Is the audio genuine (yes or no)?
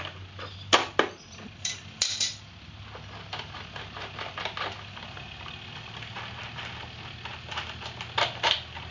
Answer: no